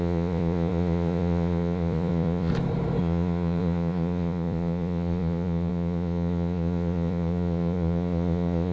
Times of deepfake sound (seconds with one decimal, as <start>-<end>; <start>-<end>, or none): 0.0-2.5; 3.0-8.7